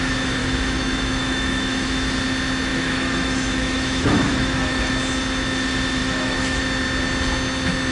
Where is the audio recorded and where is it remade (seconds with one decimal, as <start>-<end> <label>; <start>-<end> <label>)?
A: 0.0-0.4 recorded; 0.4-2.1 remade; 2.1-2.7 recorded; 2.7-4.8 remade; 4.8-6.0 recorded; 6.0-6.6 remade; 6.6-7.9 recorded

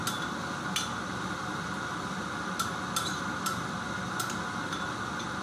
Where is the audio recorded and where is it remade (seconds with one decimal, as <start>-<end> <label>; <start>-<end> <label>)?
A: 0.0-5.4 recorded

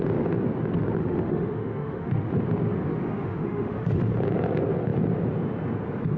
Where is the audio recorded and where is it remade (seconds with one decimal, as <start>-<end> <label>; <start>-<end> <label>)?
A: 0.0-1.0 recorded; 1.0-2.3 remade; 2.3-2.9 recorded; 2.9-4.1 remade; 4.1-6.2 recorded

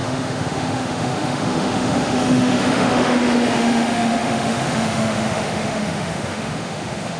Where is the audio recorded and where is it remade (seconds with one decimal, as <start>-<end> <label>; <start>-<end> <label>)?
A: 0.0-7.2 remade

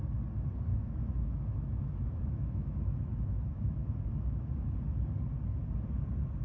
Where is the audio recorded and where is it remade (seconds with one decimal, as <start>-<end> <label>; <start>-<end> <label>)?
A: 0.0-0.7 recorded; 0.7-4.5 remade; 4.5-6.4 recorded

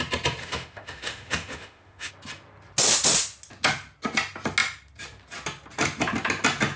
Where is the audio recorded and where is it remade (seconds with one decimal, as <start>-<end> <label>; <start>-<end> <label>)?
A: 0.0-0.4 recorded; 0.4-2.1 remade; 2.1-6.8 recorded